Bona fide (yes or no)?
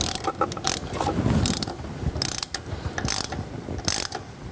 yes